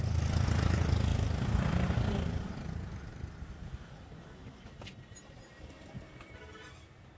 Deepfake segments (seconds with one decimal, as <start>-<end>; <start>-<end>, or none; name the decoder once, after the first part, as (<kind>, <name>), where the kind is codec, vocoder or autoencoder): none

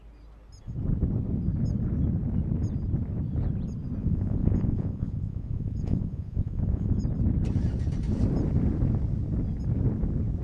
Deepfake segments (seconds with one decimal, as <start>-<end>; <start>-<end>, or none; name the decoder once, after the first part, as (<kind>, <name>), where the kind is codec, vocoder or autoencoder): 4.0-7.0 (vocoder, Vocos)

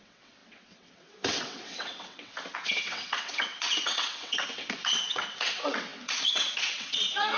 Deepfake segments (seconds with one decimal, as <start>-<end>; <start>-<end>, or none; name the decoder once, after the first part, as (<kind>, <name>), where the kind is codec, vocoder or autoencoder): 0.0-7.4 (vocoder, WaveNeXt)

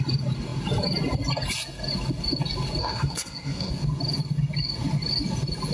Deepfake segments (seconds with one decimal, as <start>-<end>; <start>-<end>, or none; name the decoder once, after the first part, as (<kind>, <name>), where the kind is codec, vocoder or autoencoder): 2.8-3.7 (codec, SNAC)

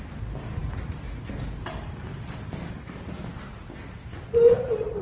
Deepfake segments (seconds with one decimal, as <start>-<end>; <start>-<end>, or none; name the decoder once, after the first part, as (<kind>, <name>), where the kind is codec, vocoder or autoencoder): none

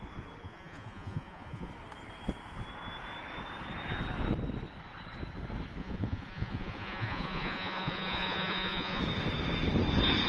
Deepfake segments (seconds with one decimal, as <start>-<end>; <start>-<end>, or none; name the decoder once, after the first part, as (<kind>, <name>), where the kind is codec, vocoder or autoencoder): 0.4-1.7 (vocoder, Vocos); 5.8-9.0

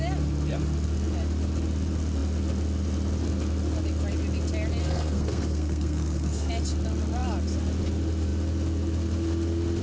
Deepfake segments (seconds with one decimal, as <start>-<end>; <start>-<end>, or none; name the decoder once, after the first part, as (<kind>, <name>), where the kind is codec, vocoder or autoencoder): 4.8-6.5 (codec, SNAC)